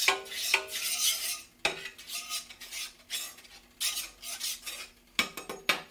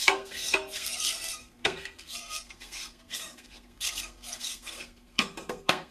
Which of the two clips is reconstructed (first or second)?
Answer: second